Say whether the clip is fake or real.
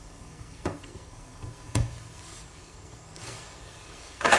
fake